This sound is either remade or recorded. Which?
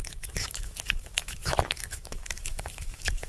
remade